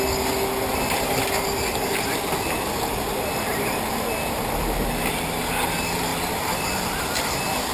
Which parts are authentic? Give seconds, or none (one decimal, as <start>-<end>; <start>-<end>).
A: 0.0-6.1; 7.0-7.7